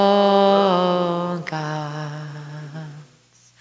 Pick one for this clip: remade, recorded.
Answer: recorded